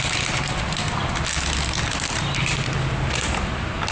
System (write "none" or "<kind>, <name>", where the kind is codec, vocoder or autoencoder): none